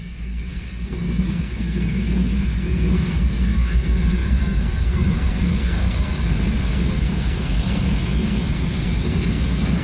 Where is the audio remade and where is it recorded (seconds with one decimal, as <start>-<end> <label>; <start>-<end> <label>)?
0.0-9.8 remade